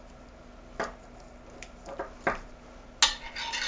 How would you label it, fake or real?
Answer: real